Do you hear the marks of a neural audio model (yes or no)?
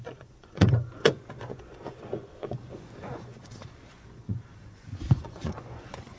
yes